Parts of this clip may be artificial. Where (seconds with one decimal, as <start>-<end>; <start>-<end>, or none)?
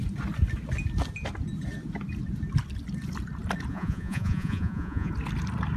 3.7-5.1